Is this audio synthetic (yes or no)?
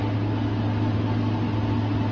no